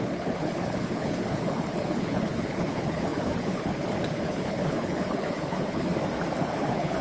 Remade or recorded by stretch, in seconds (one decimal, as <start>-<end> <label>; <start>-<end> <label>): 0.0-5.9 remade; 5.9-6.4 recorded; 6.4-7.0 remade